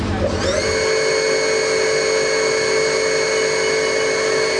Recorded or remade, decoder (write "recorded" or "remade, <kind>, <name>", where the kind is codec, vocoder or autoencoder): recorded